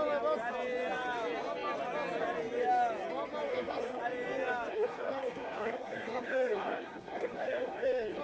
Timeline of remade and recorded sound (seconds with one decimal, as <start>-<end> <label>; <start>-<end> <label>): 0.0-3.5 recorded; 3.5-4.0 remade; 4.0-4.7 recorded; 4.7-8.2 remade